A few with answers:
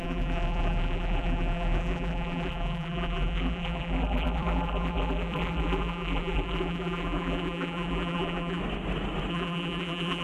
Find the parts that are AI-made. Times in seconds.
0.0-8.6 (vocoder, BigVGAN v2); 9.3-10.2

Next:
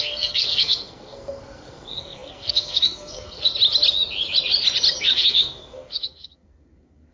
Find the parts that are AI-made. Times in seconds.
0.0-3.5 (codec, SNAC); 5.0-7.1

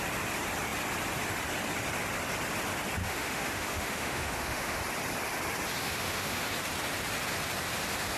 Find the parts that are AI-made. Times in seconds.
3.0-4.8 (autoencoder, DAC-VAE); 5.8-6.4